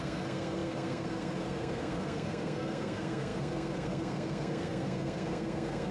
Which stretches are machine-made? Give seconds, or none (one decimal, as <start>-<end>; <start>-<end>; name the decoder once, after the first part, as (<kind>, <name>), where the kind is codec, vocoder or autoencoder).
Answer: 0.0-5.9 (codec, SNAC)